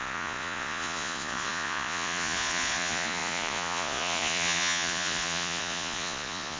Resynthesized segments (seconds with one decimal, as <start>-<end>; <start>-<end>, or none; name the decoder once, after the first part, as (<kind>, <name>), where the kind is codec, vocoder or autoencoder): 0.0-6.6 (vocoder, Vocos)